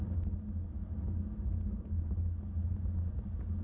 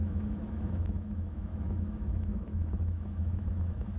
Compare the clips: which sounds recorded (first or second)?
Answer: first